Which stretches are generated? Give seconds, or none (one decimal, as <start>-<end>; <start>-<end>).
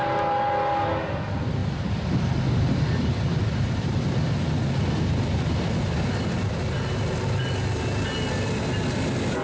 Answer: 1.6-6.4